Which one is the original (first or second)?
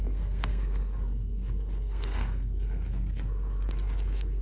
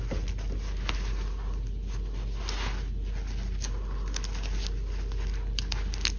second